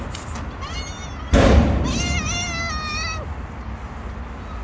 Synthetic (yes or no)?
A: no